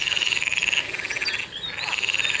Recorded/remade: recorded